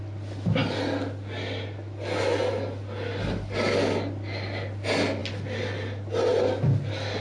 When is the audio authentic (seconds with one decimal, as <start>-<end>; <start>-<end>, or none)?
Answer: 0.0-7.2